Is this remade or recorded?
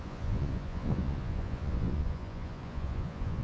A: remade